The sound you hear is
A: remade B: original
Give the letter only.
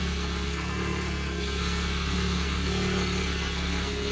A